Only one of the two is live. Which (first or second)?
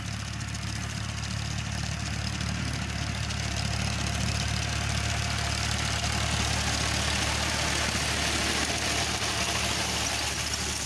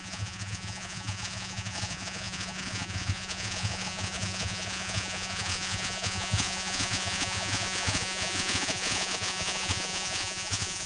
first